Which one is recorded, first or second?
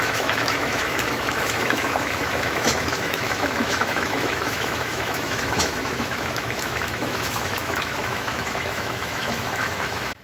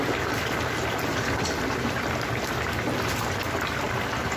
second